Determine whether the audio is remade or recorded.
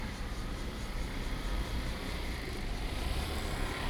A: remade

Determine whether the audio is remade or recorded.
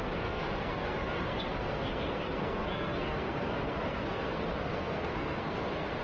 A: remade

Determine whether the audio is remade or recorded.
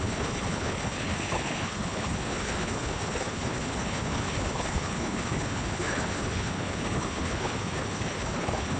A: remade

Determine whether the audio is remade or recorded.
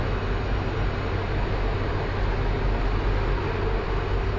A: recorded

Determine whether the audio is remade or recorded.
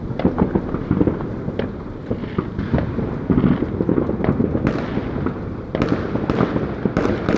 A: recorded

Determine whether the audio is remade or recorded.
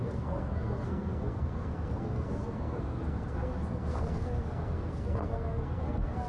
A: remade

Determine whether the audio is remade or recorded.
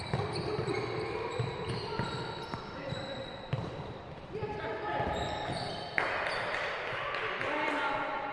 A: remade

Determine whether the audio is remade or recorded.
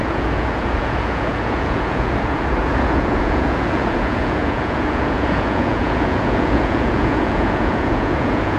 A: remade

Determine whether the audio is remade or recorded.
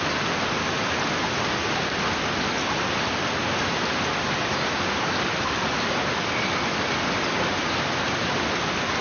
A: recorded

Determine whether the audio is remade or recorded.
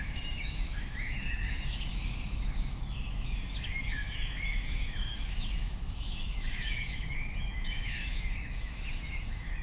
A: remade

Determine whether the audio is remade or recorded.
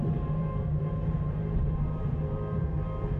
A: remade